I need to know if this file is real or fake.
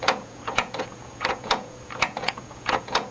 fake